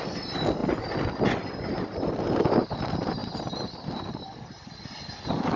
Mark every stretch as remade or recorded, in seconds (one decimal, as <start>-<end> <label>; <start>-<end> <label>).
0.0-5.6 recorded